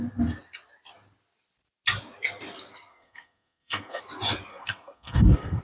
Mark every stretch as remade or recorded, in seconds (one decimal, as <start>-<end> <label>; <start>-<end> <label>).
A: 0.0-2.9 recorded; 2.9-4.0 remade; 4.0-4.5 recorded; 4.5-5.6 remade